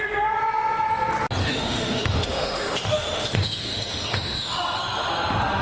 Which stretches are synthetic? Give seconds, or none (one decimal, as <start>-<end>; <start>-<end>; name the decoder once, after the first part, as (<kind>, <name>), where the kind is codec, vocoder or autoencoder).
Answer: 1.4-4.6 (autoencoder, DAC-VAE)